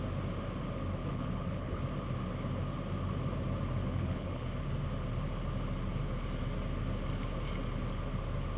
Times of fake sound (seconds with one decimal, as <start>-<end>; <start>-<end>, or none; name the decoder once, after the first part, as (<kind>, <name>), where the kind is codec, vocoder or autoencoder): 1.0-1.8 (codec, HILCodec); 3.8-4.5

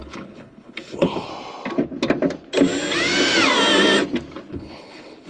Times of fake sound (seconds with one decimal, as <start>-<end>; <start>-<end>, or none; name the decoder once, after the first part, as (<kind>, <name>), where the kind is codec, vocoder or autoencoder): 0.0-1.3 (codec, HILCodec); 4.5-5.3